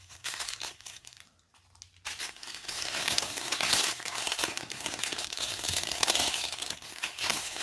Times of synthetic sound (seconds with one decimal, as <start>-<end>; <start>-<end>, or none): 0.0-1.2; 2.2-7.6